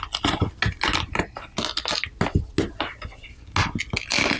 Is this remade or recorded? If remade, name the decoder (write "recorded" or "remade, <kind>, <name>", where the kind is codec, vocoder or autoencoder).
recorded